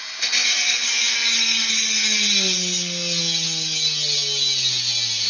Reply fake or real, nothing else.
real